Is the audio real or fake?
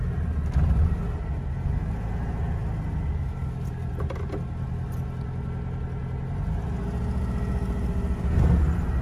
real